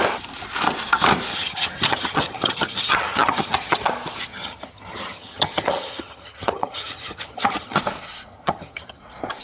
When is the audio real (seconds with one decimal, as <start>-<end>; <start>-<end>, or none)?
0.0-1.3; 3.9-4.3; 7.8-8.3; 9.0-9.4